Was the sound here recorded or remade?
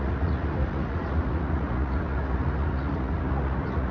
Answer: remade